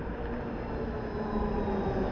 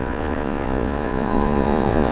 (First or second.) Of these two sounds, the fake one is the second